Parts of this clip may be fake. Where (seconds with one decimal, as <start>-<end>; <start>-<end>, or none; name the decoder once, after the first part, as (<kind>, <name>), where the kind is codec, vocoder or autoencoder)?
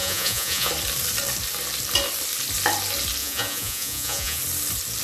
0.0-0.7 (vocoder, Vocos); 3.2-4.4